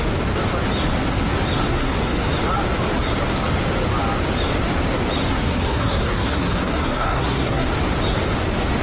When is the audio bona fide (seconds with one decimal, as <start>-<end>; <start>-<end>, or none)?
0.0-1.7; 2.3-5.3; 7.7-8.8

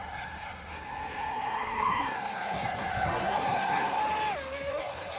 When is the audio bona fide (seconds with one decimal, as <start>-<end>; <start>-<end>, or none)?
4.0-4.7

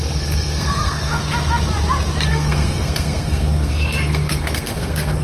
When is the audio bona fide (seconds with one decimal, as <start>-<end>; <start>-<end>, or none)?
1.2-2.3

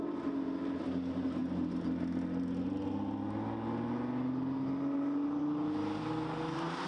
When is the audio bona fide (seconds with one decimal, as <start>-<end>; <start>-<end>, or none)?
0.0-6.9

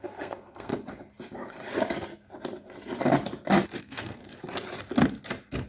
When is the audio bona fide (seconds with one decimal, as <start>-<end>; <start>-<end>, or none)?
0.7-3.8; 4.2-5.7

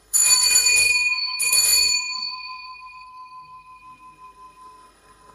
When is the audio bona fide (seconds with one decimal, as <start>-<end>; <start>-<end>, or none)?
none

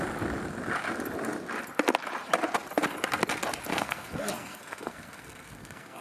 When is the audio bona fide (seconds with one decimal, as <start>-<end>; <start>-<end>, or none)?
0.0-3.7